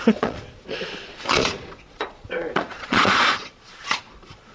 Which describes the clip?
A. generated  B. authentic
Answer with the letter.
A